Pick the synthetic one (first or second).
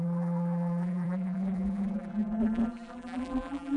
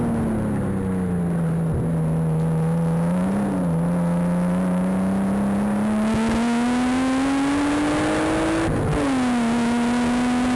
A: first